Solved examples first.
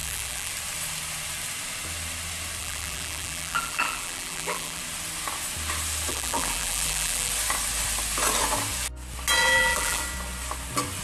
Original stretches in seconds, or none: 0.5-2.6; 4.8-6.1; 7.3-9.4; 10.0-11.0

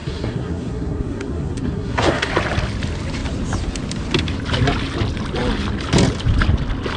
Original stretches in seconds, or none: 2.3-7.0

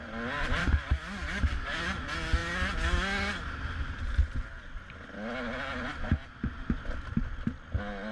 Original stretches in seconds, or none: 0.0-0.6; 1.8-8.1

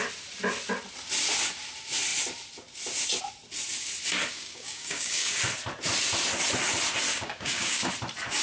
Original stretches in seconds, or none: 0.0-4.3; 5.4-7.1; 7.9-8.4

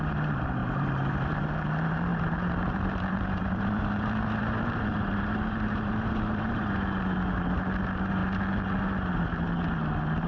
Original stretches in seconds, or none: 0.0-0.6; 1.5-2.1; 6.7-10.3

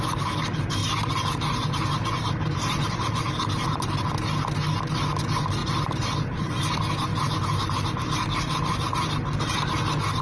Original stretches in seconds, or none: 0.0-0.8; 3.3-5.6; 6.6-7.1; 8.0-10.2

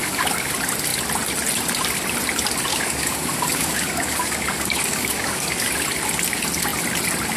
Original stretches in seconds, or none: 0.5-2.7; 5.7-7.4